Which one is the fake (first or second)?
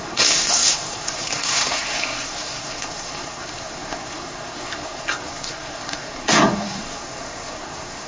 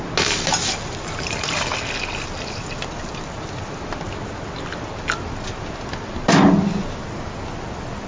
first